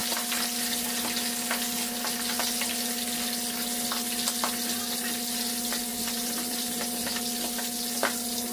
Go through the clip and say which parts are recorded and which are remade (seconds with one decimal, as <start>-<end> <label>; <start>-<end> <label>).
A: 0.0-5.9 recorded; 5.9-7.1 remade; 7.1-8.5 recorded